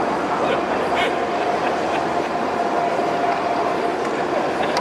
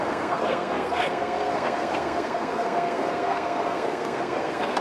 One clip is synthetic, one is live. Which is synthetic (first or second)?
second